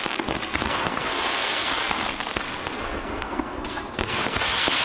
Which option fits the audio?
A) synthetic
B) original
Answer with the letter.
A